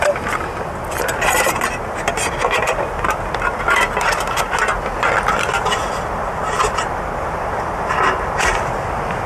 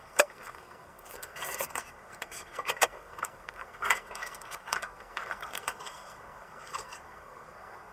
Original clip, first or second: first